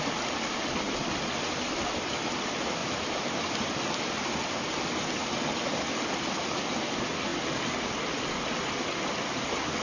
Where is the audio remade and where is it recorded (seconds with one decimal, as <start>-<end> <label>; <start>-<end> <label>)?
0.0-2.8 recorded; 2.8-6.8 remade; 6.8-9.8 recorded

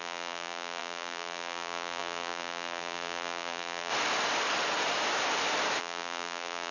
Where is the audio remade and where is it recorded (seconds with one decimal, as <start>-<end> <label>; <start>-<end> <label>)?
0.0-3.9 remade; 3.9-5.8 recorded; 5.8-6.7 remade

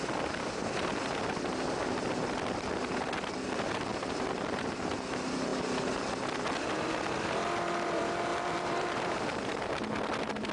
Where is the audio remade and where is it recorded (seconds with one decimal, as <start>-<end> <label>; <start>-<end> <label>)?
0.0-8.3 recorded; 8.3-9.6 remade; 9.6-10.5 recorded